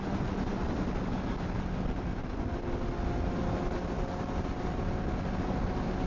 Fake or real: real